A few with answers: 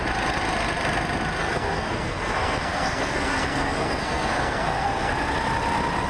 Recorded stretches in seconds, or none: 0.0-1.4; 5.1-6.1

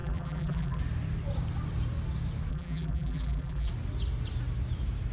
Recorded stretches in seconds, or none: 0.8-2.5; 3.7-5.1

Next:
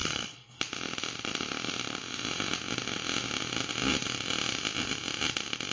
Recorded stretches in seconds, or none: 0.6-5.7

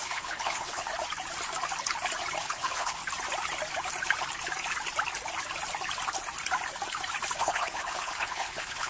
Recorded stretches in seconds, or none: 0.9-2.4; 3.0-7.4

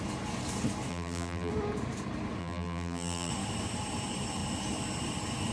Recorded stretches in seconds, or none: 0.0-0.9; 1.5-2.4; 3.3-5.5